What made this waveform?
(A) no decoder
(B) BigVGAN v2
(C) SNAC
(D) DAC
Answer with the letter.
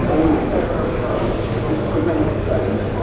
D